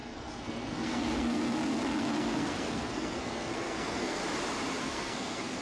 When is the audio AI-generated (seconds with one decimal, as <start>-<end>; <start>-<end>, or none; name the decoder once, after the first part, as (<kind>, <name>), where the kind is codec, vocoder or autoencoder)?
0.0-4.2 (codec, SNAC); 4.8-5.6